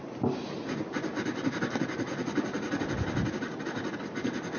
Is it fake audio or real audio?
real